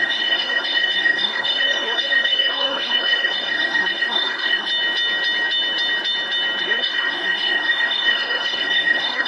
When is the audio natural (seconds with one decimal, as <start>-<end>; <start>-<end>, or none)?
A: 4.7-6.6